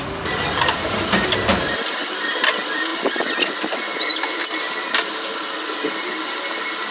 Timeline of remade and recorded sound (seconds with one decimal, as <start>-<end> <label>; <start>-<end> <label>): 0.0-1.5 recorded; 1.5-2.1 remade; 2.1-6.9 recorded